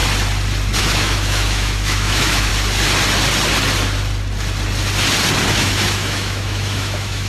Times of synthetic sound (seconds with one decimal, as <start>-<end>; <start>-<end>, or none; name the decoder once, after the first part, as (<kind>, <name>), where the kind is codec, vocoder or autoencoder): 0.8-2.5 (autoencoder, DAC-VAE); 5.5-7.3